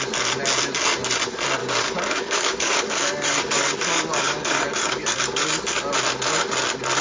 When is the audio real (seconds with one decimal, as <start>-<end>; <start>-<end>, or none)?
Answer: 0.0-1.6; 5.8-7.0